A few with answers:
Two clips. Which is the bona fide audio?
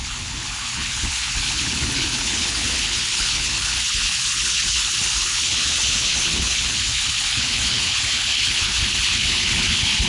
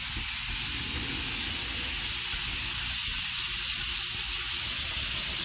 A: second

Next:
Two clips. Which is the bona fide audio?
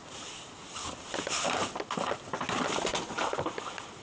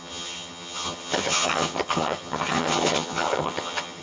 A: first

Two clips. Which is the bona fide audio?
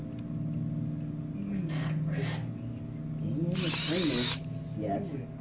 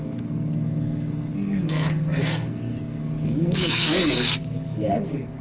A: first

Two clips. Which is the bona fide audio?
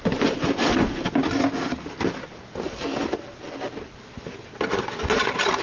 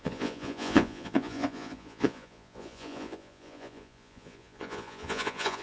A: first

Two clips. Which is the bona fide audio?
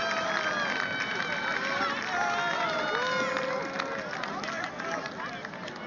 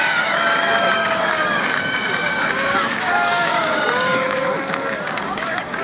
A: first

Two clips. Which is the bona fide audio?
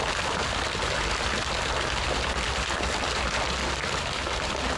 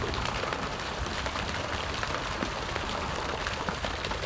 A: first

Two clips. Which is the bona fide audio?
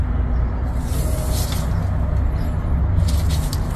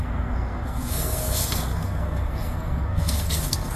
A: first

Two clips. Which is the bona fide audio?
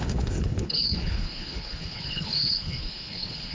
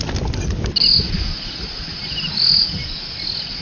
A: second